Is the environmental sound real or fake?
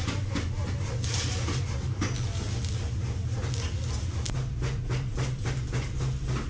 real